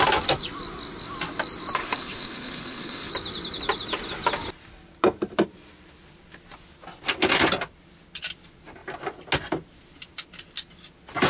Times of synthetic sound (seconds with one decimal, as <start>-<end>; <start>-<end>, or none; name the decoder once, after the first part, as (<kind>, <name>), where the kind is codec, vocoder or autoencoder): 1.8-3.1 (autoencoder, DAC-VAE)